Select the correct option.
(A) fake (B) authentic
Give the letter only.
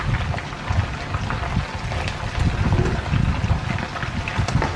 B